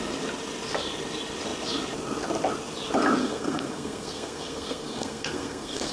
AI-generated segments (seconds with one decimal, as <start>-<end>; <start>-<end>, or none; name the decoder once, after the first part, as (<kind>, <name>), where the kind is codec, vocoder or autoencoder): 3.2-5.9 (codec, SNAC)